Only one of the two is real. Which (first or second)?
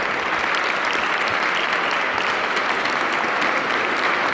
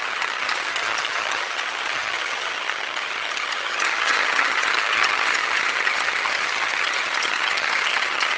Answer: first